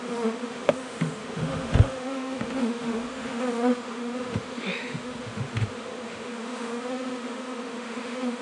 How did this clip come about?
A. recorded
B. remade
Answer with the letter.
B